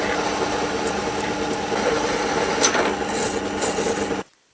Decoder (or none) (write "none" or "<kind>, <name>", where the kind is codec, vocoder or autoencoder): none